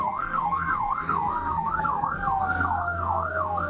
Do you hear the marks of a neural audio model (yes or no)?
yes